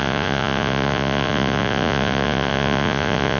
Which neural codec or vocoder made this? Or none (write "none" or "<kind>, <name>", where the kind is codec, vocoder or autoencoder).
vocoder, Vocos